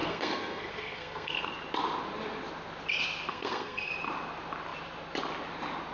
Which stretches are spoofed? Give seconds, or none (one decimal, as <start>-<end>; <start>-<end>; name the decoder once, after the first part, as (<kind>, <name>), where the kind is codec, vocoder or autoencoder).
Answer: 0.0-1.5 (codec, SNAC); 3.3-3.9